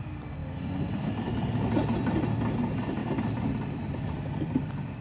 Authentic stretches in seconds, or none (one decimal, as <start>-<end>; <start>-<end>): 0.0-3.0